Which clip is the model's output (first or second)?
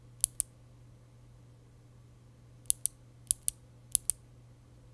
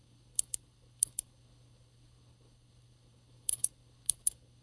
second